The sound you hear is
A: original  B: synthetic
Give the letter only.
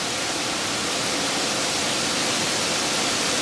A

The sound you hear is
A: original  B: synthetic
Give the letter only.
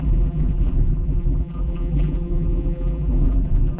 B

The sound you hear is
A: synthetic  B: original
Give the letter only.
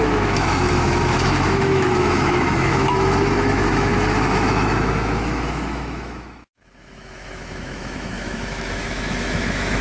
A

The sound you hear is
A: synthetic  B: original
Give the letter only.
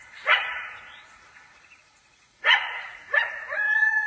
A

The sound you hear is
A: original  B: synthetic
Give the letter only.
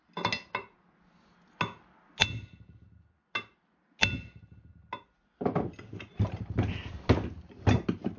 A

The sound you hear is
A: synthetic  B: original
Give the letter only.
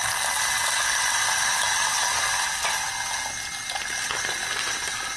B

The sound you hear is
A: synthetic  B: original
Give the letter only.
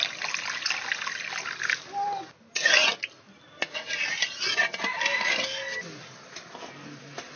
B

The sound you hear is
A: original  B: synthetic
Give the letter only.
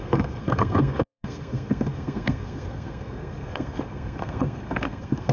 B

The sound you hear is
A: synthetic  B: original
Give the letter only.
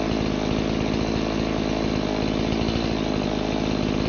B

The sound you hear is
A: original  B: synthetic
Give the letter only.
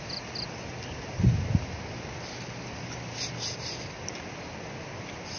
A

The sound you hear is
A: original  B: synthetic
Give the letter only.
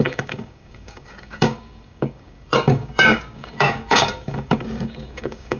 B